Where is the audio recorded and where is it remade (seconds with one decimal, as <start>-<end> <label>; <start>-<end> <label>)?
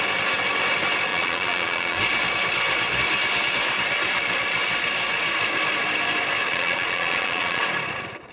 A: 0.0-1.1 recorded; 1.1-2.0 remade; 2.0-6.5 recorded; 6.5-7.6 remade; 7.6-8.3 recorded